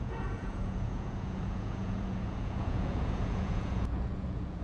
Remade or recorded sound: remade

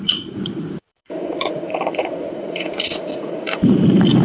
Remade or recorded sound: remade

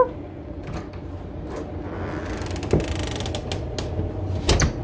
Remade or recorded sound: recorded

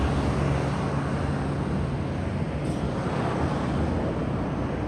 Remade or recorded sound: recorded